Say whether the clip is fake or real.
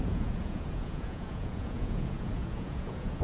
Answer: fake